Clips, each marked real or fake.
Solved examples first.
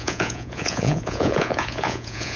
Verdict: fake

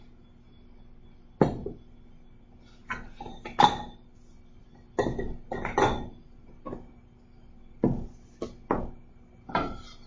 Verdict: real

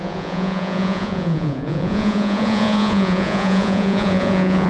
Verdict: fake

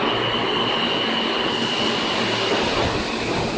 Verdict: real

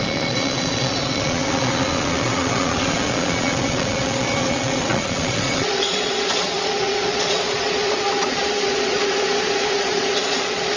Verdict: fake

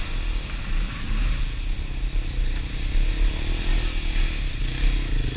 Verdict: real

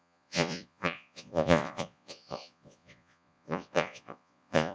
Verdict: fake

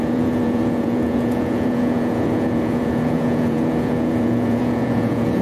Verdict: fake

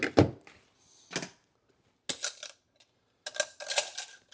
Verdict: real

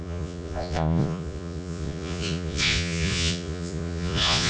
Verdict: fake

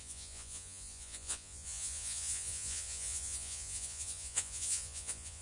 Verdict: fake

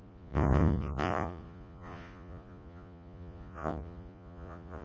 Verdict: fake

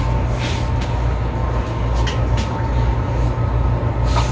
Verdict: real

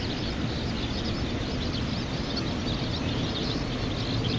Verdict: real